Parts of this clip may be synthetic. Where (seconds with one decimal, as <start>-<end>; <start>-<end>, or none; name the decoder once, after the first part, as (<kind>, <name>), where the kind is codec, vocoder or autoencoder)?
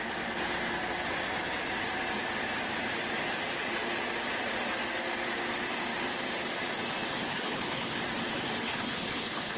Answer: 7.3-7.9 (codec, HILCodec); 8.6-9.6